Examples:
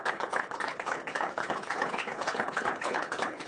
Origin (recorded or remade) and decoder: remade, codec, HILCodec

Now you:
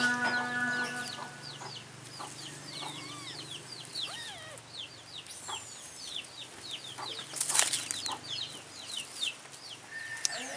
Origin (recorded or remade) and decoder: recorded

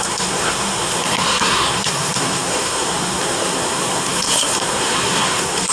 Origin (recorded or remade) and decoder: remade, codec, SNAC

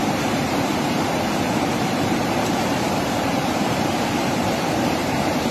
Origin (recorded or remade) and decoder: remade, vocoder, BigVGAN v2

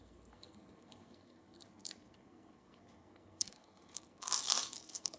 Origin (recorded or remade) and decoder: remade, codec, SNAC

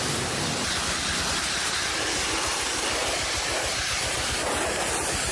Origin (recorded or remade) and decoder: recorded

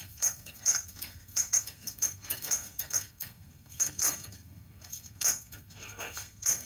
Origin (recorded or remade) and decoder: remade, codec, SNAC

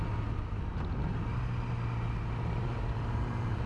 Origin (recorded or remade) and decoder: recorded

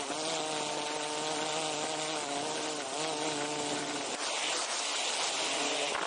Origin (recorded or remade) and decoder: recorded